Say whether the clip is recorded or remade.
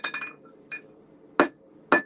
recorded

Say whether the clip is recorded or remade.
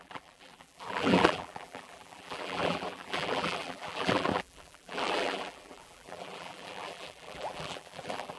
remade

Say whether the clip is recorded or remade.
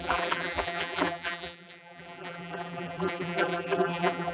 remade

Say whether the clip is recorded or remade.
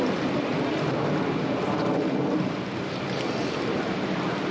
recorded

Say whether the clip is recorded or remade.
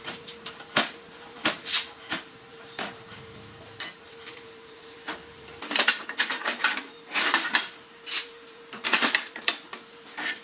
remade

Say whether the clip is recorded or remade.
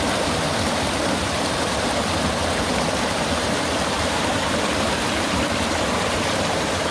remade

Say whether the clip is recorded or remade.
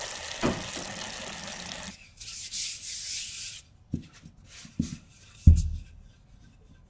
recorded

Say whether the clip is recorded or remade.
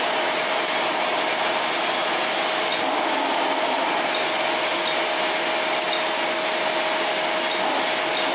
recorded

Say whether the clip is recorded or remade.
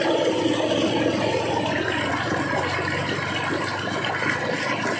recorded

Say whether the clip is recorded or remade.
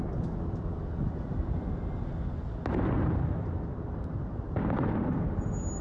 recorded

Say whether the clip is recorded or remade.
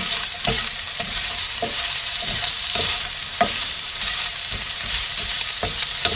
remade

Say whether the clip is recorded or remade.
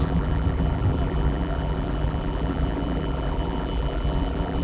remade